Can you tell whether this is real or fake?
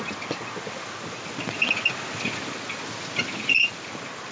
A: real